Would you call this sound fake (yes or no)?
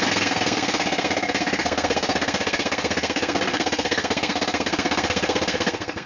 yes